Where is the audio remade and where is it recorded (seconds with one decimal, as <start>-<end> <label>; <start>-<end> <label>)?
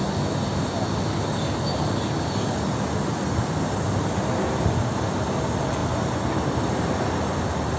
0.0-7.8 recorded